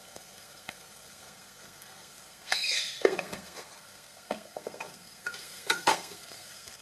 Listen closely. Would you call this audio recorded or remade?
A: remade